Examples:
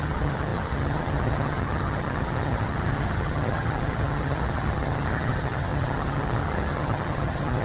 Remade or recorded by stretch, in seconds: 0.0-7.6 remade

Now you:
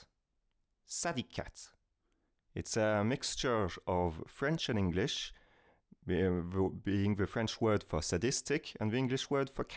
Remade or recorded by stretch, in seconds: 0.0-9.8 recorded

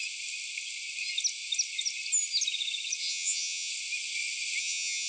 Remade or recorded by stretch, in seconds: 0.0-3.1 recorded; 3.1-3.7 remade; 3.7-4.6 recorded; 4.6-5.1 remade

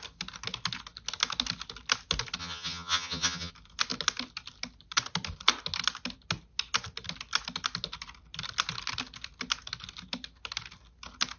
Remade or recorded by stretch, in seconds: 0.0-2.4 recorded; 2.4-3.5 remade; 3.5-11.4 recorded

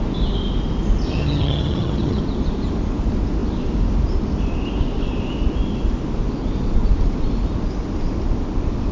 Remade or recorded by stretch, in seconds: 0.0-1.1 recorded; 1.1-2.2 remade; 2.2-8.9 recorded

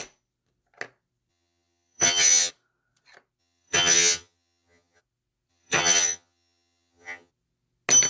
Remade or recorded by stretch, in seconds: 0.0-1.3 recorded; 1.3-2.5 remade; 2.5-3.4 recorded; 3.4-5.0 remade; 5.0-5.5 recorded; 5.5-7.3 remade; 7.3-8.1 recorded